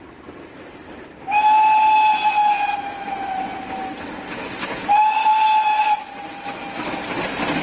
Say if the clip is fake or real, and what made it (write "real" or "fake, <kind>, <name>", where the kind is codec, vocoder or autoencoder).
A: real